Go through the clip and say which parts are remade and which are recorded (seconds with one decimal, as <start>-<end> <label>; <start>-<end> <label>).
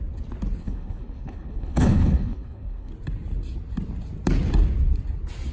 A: 0.0-0.6 recorded; 0.6-2.9 remade; 2.9-5.5 recorded